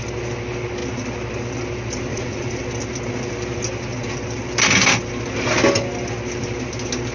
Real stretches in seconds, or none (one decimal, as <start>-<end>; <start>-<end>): 0.0-2.1; 2.6-7.1